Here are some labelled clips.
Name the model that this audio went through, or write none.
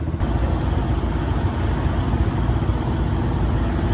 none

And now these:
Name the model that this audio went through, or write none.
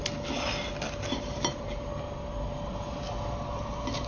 none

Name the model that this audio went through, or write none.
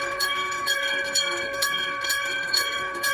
codec, SNAC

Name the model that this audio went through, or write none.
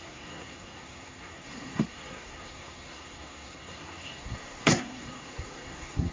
codec, SNAC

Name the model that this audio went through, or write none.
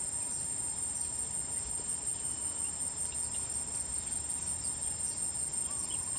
none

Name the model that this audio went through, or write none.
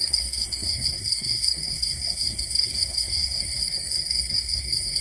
codec, SNAC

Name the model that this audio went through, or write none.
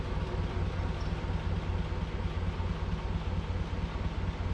none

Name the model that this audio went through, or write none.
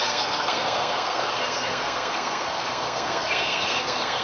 codec, SNAC